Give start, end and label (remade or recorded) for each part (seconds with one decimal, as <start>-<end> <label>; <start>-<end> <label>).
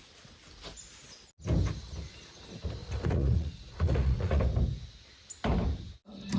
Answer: 0.0-2.8 recorded; 2.8-4.4 remade; 4.4-6.4 recorded